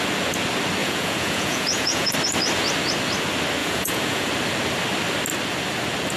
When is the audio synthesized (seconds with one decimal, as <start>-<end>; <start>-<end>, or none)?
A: 0.8-2.1; 3.6-4.3